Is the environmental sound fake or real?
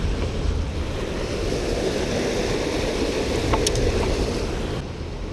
real